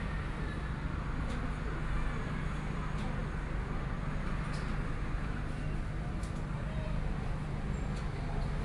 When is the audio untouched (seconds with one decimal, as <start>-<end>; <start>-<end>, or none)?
0.0-8.6